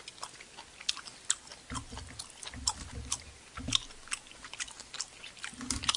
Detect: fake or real real